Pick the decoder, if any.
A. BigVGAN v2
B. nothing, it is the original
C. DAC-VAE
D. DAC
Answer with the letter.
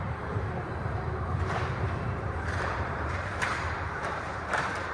A